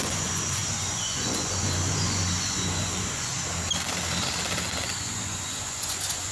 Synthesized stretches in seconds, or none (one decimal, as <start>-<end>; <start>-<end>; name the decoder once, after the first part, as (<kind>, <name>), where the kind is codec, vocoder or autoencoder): 0.0-3.3 (vocoder, Vocos); 4.9-6.3